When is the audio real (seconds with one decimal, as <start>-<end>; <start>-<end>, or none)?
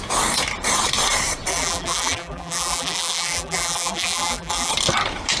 0.0-1.5; 4.7-5.4